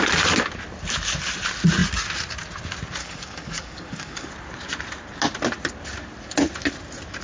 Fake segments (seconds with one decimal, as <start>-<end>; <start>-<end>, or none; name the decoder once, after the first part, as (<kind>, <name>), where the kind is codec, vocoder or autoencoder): 3.0-4.3 (codec, DAC)